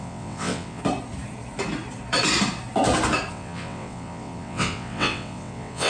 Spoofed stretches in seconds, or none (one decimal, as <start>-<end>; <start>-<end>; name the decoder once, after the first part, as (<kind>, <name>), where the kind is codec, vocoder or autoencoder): 0.0-0.8 (vocoder, WaveNeXt); 3.3-5.9

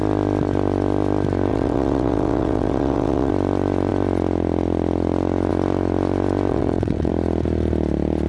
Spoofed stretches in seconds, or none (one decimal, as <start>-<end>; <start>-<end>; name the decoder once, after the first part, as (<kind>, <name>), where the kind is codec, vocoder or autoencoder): 1.5-3.3 (vocoder, WaveNeXt); 6.5-7.1

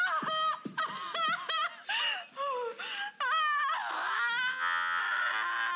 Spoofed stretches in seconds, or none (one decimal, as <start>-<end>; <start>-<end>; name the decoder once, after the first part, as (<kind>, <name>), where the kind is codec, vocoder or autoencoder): 4.5-5.0 (vocoder, WaveNeXt)

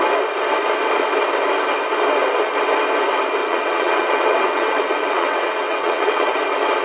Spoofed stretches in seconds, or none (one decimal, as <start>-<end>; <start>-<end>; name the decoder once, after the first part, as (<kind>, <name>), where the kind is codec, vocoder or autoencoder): 3.4-6.3 (vocoder, WaveNeXt)

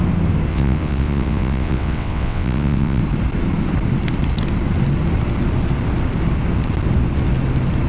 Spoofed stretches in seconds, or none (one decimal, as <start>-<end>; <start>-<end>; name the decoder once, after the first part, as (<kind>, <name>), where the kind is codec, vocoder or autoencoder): 0.5-3.0 (vocoder, WaveNeXt)